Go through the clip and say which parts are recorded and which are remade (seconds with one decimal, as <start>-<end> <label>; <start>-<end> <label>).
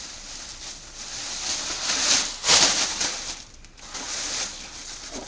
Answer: 0.0-0.5 recorded; 0.5-1.6 remade; 1.6-5.3 recorded